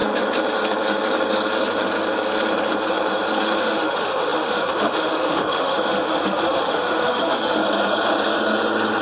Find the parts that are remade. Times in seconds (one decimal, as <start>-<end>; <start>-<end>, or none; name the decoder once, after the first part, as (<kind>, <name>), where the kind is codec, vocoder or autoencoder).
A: 3.6-7.6 (autoencoder, DAC-VAE)